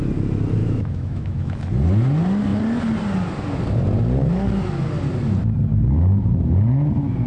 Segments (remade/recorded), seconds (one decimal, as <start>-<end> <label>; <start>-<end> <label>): 0.0-0.6 recorded; 0.6-1.7 remade; 1.7-7.3 recorded